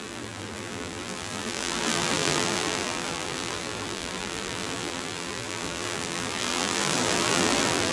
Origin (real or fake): fake